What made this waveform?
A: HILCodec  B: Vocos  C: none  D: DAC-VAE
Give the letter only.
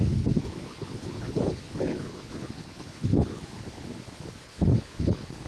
A